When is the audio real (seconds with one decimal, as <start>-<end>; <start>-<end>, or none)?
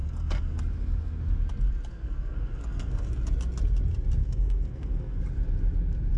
0.6-1.9; 3.1-4.2; 5.2-6.2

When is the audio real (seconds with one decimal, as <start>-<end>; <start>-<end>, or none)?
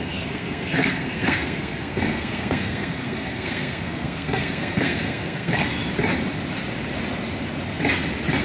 5.8-8.4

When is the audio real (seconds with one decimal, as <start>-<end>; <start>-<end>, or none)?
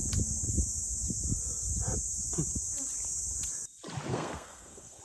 0.0-4.1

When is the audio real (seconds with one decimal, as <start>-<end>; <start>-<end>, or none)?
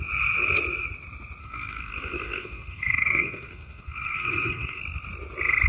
0.0-1.4; 4.8-5.7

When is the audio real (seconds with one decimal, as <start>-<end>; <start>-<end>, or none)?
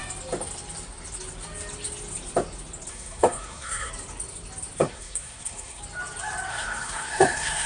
0.0-2.9; 3.9-4.8; 5.8-6.5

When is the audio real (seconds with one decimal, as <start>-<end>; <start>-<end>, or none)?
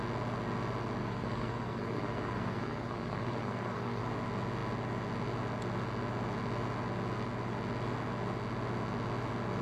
0.0-1.0; 4.0-9.6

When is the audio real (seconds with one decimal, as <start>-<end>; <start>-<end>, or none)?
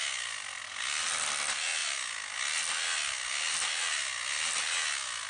0.0-5.3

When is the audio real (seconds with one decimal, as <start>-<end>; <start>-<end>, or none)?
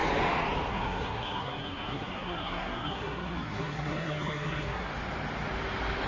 0.0-0.7; 4.9-6.1